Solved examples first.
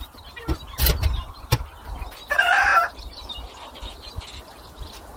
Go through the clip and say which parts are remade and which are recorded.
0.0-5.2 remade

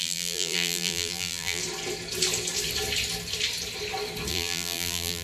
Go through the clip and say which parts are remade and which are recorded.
0.0-1.6 remade; 1.6-4.3 recorded; 4.3-5.2 remade

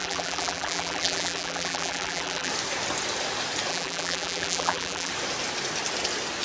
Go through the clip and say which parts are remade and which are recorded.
0.0-2.5 remade; 2.5-3.7 recorded; 3.7-5.1 remade; 5.1-6.4 recorded

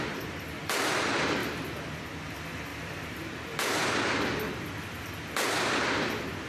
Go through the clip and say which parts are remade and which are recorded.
0.0-2.7 recorded; 2.7-3.3 remade; 3.3-6.5 recorded

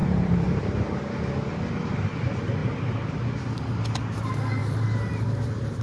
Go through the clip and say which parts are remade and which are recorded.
0.0-1.1 remade; 1.1-4.6 recorded; 4.6-5.8 remade

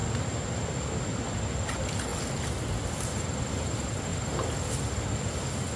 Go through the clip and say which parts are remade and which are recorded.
0.0-5.8 recorded

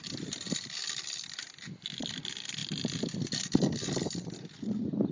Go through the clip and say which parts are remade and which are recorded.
0.0-5.1 recorded

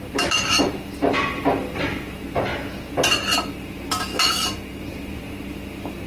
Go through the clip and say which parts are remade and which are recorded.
0.0-2.5 remade; 2.5-3.6 recorded; 3.6-4.1 remade; 4.1-5.4 recorded; 5.4-6.1 remade